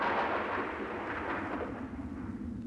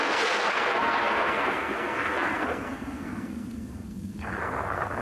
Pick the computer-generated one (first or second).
second